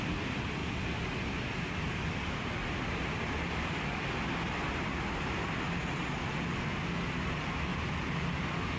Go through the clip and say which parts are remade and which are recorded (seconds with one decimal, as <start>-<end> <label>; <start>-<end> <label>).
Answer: 0.0-8.8 recorded